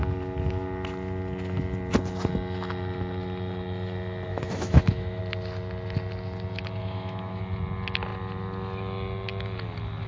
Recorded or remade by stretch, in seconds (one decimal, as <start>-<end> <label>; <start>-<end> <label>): 0.0-4.3 recorded; 4.3-5.2 remade; 5.2-6.8 recorded; 6.8-7.4 remade; 7.4-10.1 recorded